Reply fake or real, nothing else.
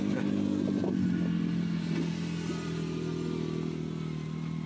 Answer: real